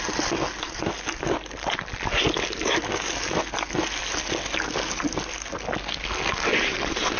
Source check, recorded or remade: recorded